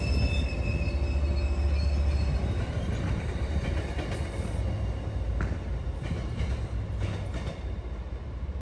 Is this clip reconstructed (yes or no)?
no